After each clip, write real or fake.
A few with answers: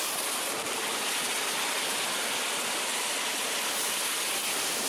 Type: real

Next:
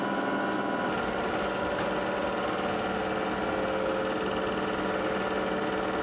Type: real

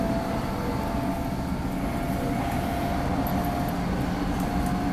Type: real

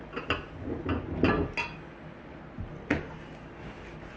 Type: real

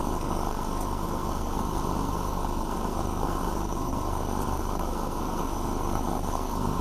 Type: fake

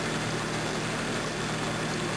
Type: real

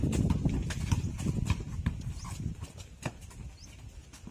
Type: real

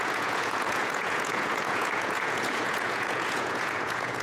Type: fake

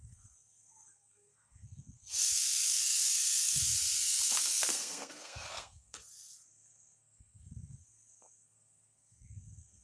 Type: fake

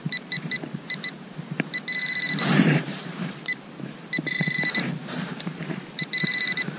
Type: fake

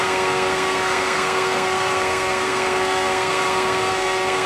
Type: fake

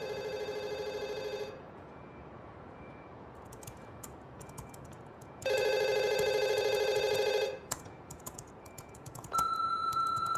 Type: fake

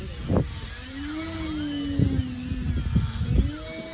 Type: real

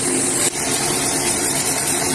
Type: real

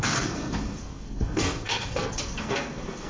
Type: fake